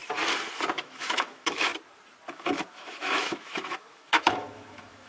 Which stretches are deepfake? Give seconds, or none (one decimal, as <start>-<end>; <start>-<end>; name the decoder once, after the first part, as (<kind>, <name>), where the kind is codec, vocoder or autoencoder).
0.8-1.7 (autoencoder, DAC-VAE); 2.3-5.1